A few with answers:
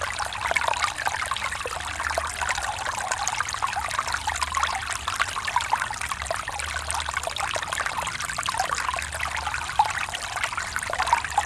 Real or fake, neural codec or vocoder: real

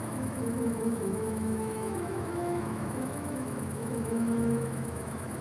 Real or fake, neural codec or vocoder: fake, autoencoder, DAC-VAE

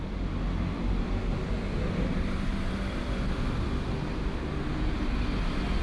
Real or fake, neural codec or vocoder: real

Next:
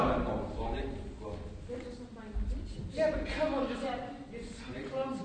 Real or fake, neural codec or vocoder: real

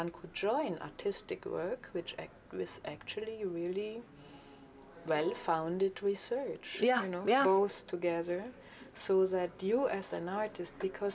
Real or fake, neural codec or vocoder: real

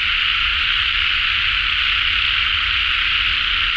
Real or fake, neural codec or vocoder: real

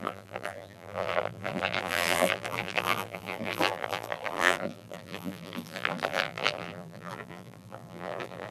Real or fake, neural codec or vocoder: fake, vocoder, BigVGAN v2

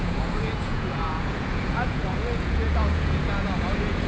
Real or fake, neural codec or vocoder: fake, vocoder, Vocos